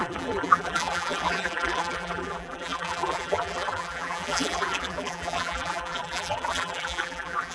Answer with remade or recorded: remade